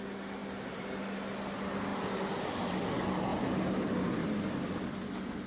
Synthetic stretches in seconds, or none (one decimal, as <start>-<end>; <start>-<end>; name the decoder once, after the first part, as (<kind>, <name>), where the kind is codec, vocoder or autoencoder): 0.4-1.0 (vocoder, BigVGAN v2)